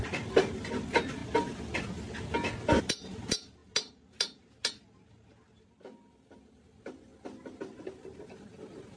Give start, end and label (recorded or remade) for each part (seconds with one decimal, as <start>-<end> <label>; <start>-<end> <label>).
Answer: 0.0-9.0 recorded